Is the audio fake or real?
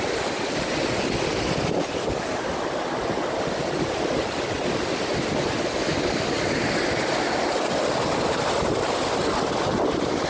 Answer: real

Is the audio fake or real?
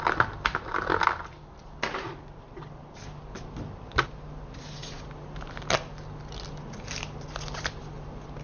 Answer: real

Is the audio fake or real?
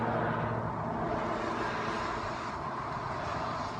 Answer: real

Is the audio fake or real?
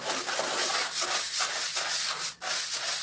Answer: real